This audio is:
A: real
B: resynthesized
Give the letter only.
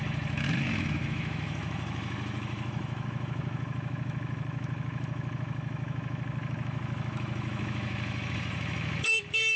B